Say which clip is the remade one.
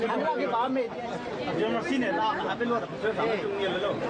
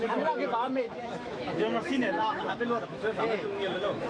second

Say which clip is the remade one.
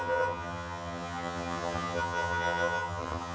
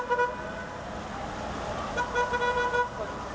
first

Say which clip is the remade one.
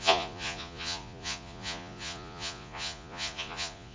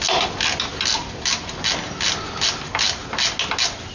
first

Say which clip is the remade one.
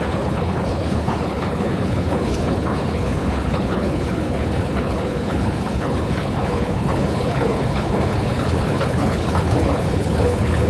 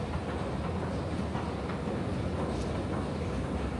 first